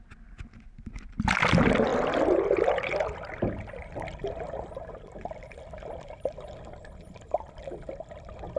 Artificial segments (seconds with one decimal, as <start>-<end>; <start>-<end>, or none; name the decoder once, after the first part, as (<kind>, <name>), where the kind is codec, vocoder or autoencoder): none